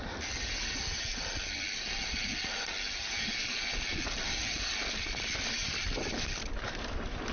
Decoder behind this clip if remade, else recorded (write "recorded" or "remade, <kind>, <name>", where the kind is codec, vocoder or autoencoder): remade, vocoder, BigVGAN v2